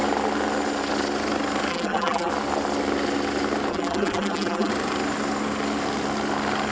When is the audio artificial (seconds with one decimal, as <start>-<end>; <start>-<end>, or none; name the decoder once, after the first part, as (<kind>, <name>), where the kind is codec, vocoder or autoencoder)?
1.7-2.3 (vocoder, BigVGAN v2); 3.7-4.7